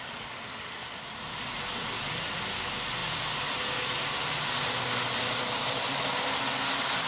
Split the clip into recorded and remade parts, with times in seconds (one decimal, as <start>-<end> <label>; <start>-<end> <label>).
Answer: 0.0-7.1 recorded